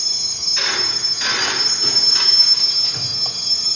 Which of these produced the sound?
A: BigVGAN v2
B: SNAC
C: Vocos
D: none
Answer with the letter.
D